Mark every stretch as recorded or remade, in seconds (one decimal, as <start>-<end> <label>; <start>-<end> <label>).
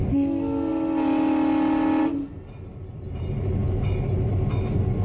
0.0-5.0 recorded